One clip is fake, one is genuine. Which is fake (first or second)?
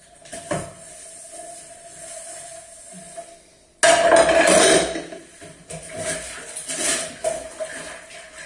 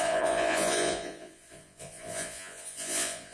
second